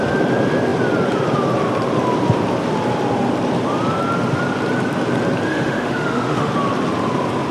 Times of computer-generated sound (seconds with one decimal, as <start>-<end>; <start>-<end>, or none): 5.5-6.5